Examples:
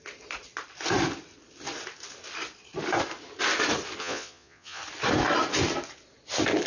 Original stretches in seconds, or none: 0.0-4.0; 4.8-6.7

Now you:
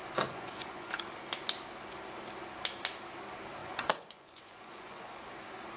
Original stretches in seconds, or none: 0.9-3.6; 5.3-5.8

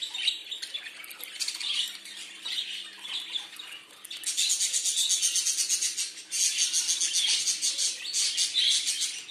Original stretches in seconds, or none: 0.0-9.3

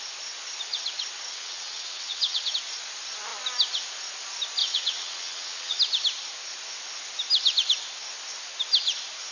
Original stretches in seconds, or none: 0.0-1.3; 2.5-4.6; 5.8-9.3

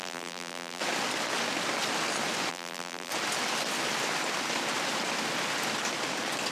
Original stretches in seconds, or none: 0.8-2.5; 3.1-6.5

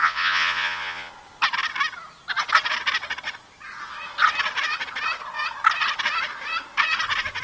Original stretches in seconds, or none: 1.1-7.4

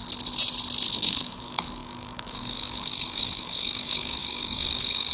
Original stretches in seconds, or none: 0.0-0.9

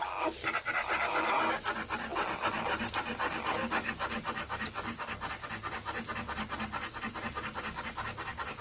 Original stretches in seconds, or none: 0.0-8.6